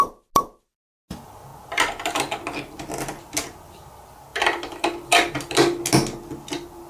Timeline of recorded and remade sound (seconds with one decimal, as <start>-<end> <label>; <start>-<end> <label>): 0.0-6.9 recorded

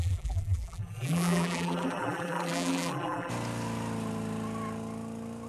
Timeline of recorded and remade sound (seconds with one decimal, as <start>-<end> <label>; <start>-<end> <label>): 0.0-3.3 remade; 3.3-5.5 recorded

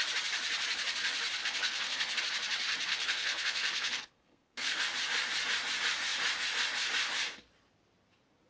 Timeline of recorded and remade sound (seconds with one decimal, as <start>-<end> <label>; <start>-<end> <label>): 0.0-1.4 recorded; 1.4-2.2 remade; 2.2-2.9 recorded; 2.9-4.8 remade; 4.8-8.5 recorded